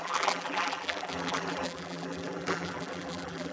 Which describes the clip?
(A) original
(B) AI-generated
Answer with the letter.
B